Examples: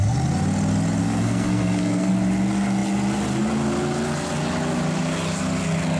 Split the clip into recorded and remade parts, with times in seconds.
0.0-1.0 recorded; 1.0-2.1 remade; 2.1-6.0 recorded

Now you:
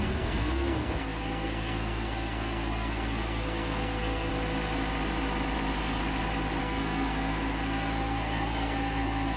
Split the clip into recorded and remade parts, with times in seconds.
0.0-4.3 remade; 4.3-6.6 recorded; 6.6-9.4 remade

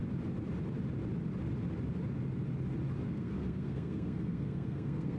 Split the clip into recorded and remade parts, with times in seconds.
0.0-3.1 recorded; 3.1-5.2 remade

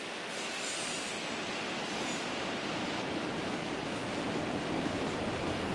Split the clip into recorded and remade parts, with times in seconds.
0.0-5.7 recorded

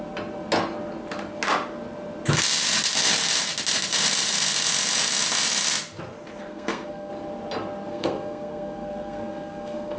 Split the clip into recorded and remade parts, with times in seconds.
0.0-6.5 recorded; 6.5-7.1 remade; 7.1-7.9 recorded; 7.9-10.0 remade

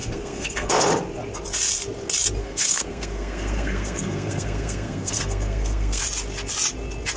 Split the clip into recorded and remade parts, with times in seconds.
0.0-0.8 remade; 0.8-2.4 recorded; 2.4-6.0 remade; 6.0-7.2 recorded

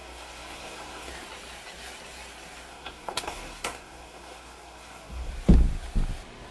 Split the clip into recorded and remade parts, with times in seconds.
0.0-1.1 remade; 1.1-2.7 recorded; 2.7-5.3 remade; 5.3-6.5 recorded

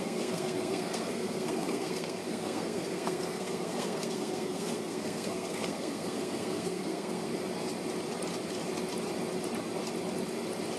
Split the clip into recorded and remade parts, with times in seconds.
0.0-7.3 remade; 7.3-10.8 recorded